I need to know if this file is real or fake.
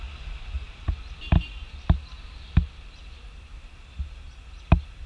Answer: real